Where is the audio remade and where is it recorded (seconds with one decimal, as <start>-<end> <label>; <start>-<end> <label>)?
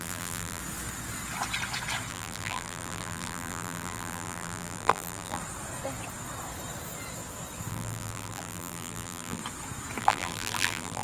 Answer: 0.0-0.6 remade; 0.6-2.1 recorded; 2.1-5.4 remade; 5.4-7.7 recorded; 7.7-9.4 remade; 9.4-10.0 recorded; 10.0-11.0 remade